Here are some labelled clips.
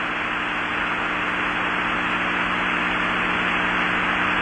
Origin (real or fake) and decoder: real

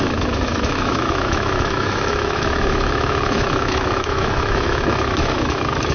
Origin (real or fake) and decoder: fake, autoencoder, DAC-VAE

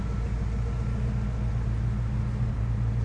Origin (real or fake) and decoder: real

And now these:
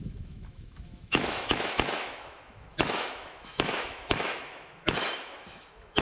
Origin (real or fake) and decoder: fake, autoencoder, DAC-VAE